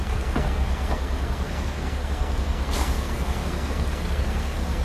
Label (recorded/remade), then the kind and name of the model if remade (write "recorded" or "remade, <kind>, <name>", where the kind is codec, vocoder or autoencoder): remade, codec, SNAC